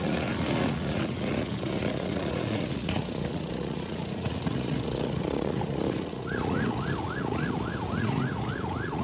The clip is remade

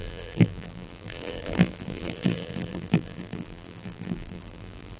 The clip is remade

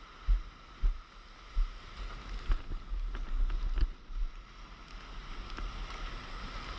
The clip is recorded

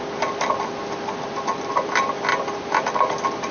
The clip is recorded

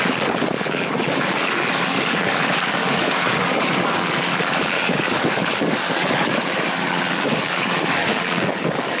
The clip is remade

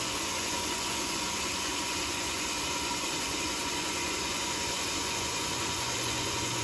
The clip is remade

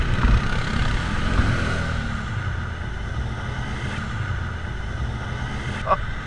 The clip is recorded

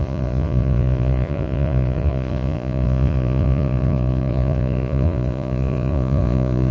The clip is remade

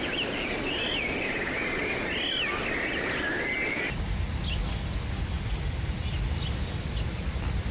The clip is recorded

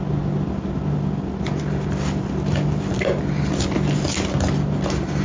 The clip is recorded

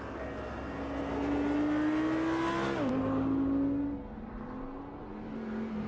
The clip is recorded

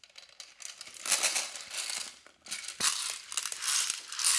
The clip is recorded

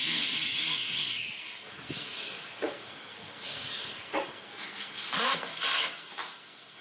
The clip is remade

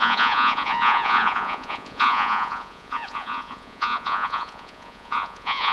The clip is remade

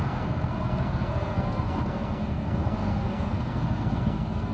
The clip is remade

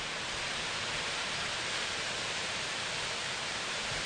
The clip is remade